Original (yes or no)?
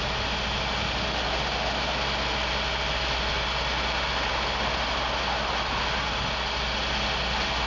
yes